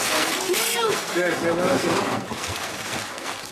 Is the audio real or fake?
fake